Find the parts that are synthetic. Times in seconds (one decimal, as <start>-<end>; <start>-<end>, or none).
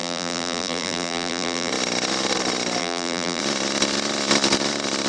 0.0-1.7; 2.8-3.4